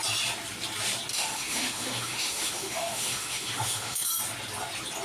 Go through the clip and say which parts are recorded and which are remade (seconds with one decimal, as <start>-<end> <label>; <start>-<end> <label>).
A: 0.0-1.1 recorded; 1.1-4.1 remade; 4.1-5.0 recorded